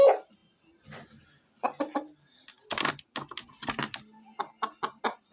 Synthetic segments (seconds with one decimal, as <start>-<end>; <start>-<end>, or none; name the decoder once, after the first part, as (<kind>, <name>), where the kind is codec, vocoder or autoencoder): none

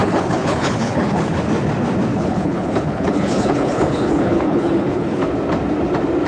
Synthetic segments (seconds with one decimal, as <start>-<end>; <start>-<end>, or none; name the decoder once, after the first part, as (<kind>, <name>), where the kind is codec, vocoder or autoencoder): 0.0-1.4 (codec, HILCodec); 2.1-5.3